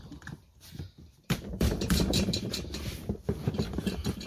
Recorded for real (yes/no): no